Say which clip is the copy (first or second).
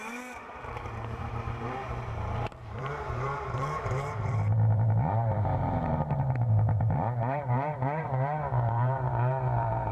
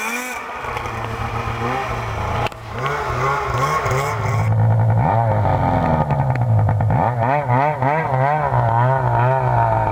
first